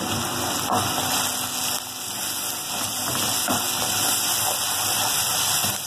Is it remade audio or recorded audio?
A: recorded